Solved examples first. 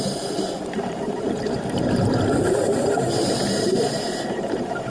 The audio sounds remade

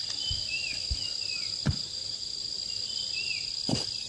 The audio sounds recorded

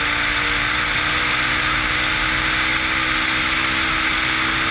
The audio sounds recorded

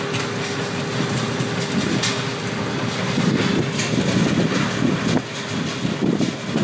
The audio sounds recorded